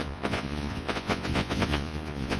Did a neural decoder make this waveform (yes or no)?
yes